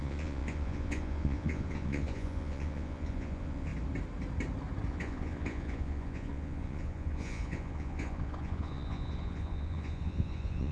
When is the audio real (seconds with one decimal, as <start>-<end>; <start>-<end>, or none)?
3.7-4.9